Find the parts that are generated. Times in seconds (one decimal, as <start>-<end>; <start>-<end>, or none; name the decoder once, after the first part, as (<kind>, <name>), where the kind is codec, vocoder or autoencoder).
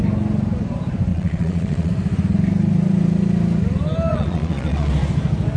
1.1-1.9 (vocoder, Vocos); 4.1-4.9